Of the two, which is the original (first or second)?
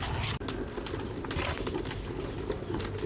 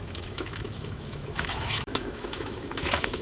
first